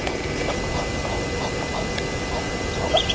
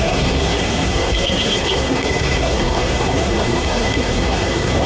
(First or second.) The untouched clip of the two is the first